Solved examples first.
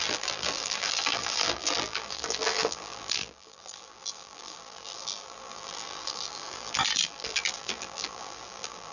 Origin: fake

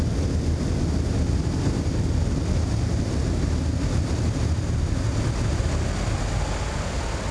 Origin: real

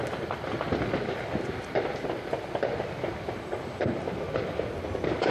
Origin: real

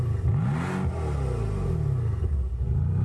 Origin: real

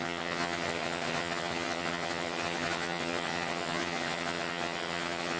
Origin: fake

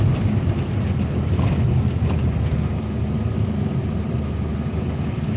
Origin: real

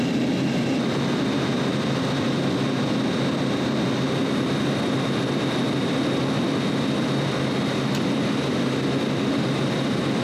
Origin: real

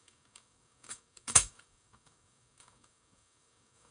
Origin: fake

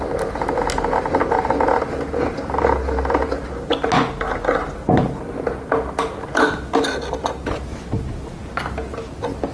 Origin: real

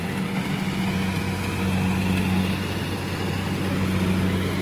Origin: real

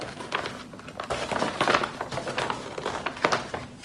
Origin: real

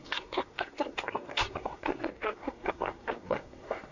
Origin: fake